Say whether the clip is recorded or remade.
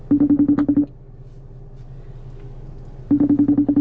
recorded